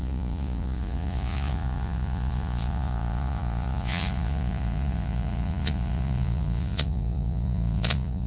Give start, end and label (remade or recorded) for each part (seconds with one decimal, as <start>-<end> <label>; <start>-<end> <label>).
0.0-8.3 remade